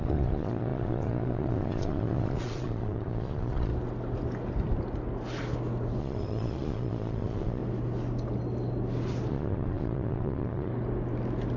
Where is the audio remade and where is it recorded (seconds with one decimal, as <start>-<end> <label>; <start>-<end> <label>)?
0.0-3.7 remade; 3.7-6.0 recorded; 6.0-7.6 remade; 7.6-9.3 recorded; 9.3-10.7 remade; 10.7-11.6 recorded